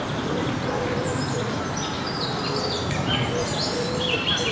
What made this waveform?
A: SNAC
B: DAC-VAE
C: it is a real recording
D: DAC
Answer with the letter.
C